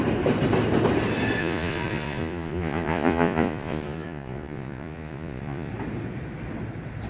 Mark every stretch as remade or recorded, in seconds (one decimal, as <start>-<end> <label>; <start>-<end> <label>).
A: 0.0-1.4 recorded; 1.4-5.7 remade; 5.7-7.1 recorded